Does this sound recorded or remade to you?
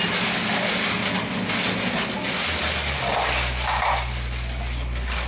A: recorded